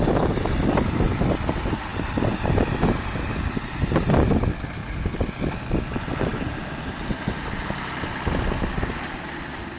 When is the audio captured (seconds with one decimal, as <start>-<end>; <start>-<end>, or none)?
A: 0.0-6.3; 7.1-9.8